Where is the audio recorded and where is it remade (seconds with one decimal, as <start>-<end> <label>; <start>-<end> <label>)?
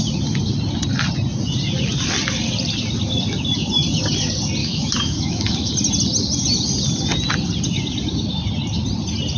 0.0-4.6 recorded; 4.6-5.7 remade; 5.7-9.4 recorded